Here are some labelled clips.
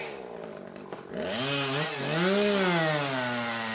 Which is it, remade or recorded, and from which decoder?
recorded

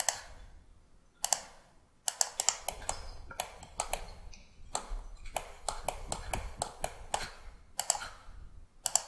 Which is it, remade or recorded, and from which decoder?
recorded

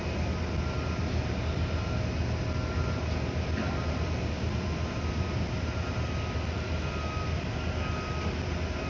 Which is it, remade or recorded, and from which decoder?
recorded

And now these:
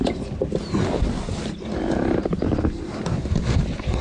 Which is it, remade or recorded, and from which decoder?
recorded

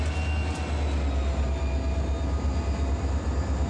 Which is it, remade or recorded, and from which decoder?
recorded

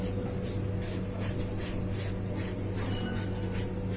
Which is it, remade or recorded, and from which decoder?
recorded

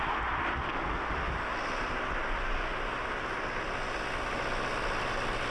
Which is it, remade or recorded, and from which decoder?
recorded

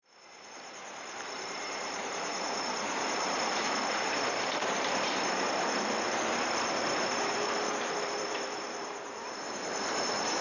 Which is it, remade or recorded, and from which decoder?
remade, vocoder, BigVGAN v2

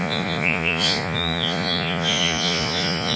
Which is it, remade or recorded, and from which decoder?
remade, vocoder, Vocos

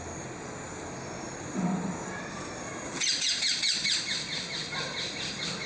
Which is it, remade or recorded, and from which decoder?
recorded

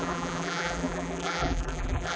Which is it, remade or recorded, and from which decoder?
remade, vocoder, BigVGAN v2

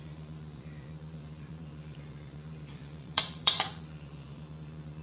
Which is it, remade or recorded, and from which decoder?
remade, vocoder, Vocos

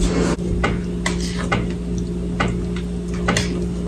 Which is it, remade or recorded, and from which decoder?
recorded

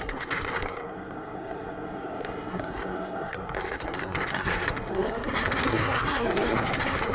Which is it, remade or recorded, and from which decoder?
remade, codec, SNAC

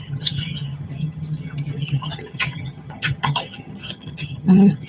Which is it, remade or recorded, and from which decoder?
remade, vocoder, HiFi-GAN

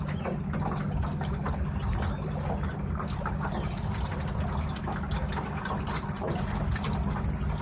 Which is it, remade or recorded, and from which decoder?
recorded